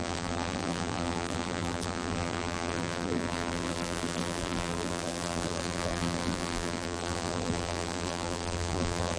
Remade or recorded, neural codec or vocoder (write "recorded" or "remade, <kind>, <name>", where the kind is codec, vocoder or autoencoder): remade, vocoder, BigVGAN v2